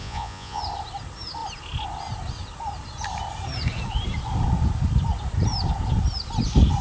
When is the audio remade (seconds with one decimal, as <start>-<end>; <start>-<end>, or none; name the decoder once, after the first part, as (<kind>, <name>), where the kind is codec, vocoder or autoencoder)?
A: 0.0-0.6 (vocoder, Vocos)